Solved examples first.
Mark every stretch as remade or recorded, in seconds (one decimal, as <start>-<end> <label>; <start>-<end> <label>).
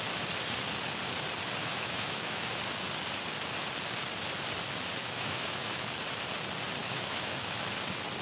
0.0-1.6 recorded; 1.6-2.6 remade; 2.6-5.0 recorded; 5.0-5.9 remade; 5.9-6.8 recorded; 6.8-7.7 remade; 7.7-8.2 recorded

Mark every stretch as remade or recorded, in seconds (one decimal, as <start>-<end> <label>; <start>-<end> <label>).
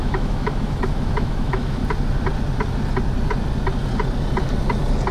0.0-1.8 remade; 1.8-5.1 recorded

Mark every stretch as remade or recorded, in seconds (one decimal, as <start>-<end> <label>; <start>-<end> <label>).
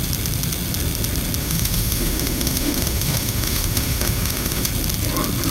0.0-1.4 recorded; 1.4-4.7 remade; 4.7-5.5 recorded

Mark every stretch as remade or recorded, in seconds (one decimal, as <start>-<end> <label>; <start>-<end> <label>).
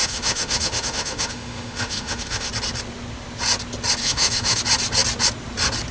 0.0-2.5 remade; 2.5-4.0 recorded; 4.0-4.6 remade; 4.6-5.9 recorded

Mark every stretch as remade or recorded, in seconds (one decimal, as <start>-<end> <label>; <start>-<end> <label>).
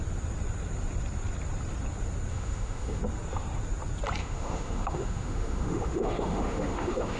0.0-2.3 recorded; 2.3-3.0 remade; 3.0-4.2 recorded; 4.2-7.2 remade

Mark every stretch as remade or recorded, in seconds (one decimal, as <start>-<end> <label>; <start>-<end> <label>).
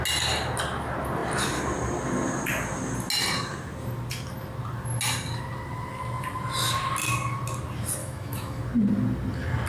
0.0-8.0 recorded; 8.0-8.6 remade; 8.6-9.7 recorded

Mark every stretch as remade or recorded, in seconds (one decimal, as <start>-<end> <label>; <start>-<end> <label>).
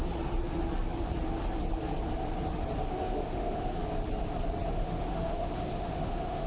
0.0-2.9 recorded; 2.9-3.8 remade; 3.8-4.7 recorded; 4.7-6.5 remade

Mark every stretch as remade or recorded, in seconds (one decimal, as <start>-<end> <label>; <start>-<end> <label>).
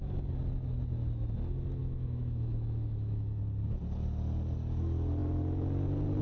0.0-1.8 recorded; 1.8-3.4 remade; 3.4-6.2 recorded